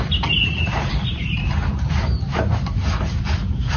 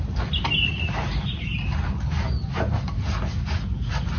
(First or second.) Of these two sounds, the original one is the second